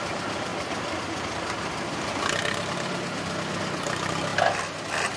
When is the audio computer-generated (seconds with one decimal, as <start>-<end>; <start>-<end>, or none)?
0.5-3.6